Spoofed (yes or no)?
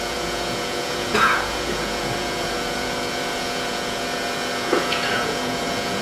yes